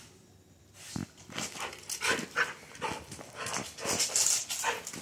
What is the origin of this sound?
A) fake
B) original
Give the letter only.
B